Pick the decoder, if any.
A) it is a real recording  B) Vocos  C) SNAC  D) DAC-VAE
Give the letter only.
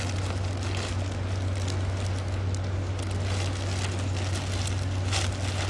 A